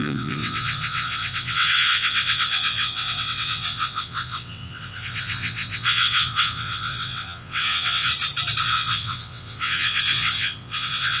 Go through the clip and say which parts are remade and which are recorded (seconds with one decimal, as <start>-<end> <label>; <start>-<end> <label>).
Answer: 0.0-8.1 remade; 8.1-8.6 recorded; 8.6-11.2 remade